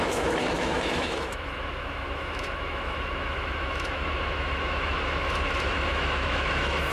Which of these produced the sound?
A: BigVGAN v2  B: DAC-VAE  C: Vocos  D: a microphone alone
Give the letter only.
B